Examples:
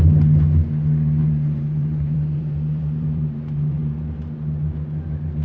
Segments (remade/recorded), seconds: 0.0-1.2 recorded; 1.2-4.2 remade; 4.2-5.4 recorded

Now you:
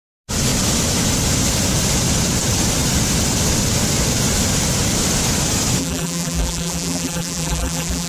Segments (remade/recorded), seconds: 0.0-5.8 recorded; 5.8-8.1 remade